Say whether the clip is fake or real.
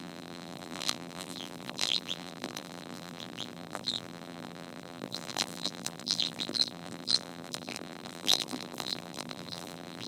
fake